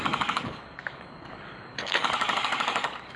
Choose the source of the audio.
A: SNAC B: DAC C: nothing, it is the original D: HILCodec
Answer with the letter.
B